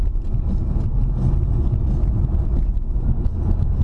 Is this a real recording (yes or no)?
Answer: yes